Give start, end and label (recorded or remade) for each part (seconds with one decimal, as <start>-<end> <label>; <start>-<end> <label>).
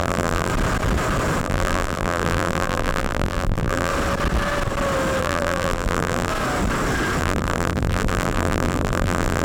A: 0.0-0.5 remade; 0.5-1.4 recorded; 1.4-3.9 remade; 3.9-5.2 recorded; 5.2-6.3 remade; 6.3-7.2 recorded; 7.2-9.4 remade